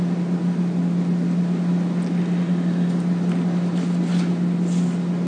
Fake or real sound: real